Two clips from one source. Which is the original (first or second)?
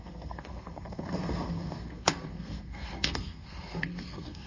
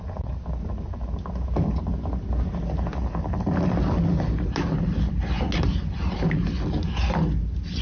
second